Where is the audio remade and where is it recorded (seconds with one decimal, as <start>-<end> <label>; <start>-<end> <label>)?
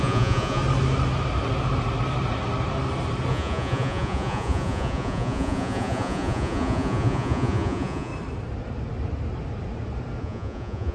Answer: 0.0-0.6 remade; 0.6-3.3 recorded; 3.3-8.1 remade; 8.1-10.2 recorded; 10.2-10.9 remade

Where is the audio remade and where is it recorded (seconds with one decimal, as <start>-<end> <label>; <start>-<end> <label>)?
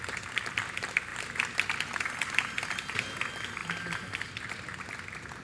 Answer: 0.0-5.4 recorded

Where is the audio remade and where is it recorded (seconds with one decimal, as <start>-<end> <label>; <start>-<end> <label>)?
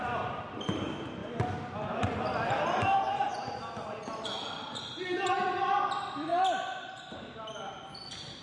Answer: 0.0-1.2 remade; 1.2-2.0 recorded; 2.0-3.3 remade; 3.3-3.9 recorded; 3.9-6.3 remade; 6.3-7.2 recorded; 7.2-8.4 remade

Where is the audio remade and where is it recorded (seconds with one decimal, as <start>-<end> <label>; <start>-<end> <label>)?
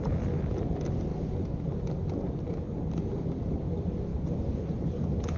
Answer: 0.0-5.4 recorded